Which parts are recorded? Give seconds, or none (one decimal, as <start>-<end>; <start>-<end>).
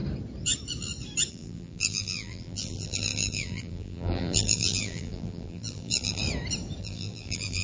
0.0-1.3; 6.2-6.8